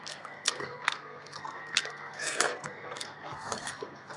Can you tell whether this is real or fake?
fake